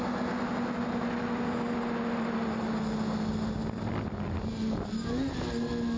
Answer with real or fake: real